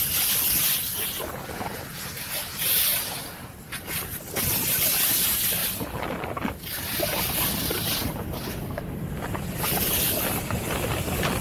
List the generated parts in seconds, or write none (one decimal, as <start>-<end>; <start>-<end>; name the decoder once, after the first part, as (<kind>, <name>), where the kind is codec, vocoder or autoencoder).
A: none

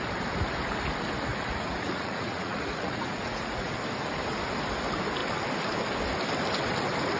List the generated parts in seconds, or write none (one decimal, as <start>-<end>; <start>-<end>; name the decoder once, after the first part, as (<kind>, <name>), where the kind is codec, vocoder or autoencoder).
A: 1.3-3.7 (vocoder, Vocos)

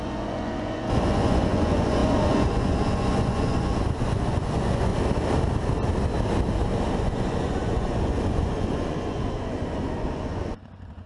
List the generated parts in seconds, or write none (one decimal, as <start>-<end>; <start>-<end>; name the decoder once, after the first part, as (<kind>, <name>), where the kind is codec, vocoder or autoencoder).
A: 0.0-4.9 (vocoder, Vocos); 7.0-11.1

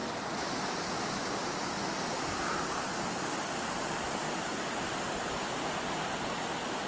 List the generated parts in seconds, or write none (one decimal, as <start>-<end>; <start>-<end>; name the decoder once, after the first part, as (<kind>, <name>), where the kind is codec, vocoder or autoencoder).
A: none

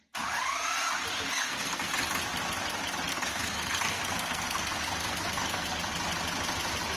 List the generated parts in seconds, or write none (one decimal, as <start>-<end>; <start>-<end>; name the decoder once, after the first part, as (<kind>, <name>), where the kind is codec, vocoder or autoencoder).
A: 1.4-1.9 (codec, SNAC); 3.1-5.7

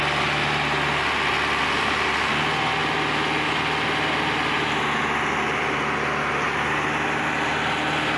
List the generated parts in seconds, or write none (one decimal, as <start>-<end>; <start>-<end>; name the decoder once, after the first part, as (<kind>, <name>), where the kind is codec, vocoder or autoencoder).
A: 1.6-2.3 (vocoder, BigVGAN v2)

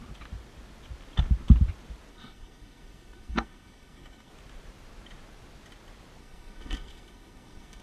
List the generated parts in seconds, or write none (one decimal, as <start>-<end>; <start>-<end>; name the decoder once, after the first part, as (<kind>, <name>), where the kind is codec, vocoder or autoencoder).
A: 2.1-4.3 (codec, SNAC); 6.2-7.8